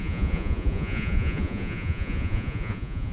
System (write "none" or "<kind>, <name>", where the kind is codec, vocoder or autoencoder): vocoder, Vocos